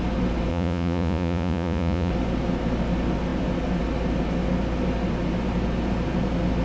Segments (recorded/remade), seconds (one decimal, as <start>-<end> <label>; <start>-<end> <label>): 0.0-0.5 recorded; 0.5-2.1 remade; 2.1-6.6 recorded

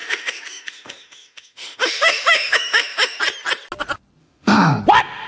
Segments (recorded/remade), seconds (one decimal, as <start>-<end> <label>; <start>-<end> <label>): 0.0-3.2 remade; 3.2-4.2 recorded; 4.2-4.8 remade; 4.8-5.3 recorded

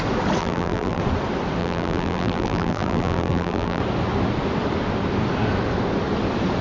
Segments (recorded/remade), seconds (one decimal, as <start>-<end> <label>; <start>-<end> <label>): 0.0-0.4 recorded; 0.4-1.0 remade; 1.0-1.6 recorded; 1.6-3.8 remade; 3.8-6.6 recorded